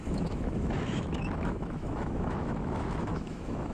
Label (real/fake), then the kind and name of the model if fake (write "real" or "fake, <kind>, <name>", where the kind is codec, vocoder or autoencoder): fake, autoencoder, DAC-VAE